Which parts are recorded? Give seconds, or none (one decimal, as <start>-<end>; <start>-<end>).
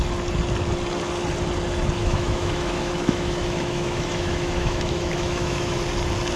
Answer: 0.0-2.0; 5.8-6.4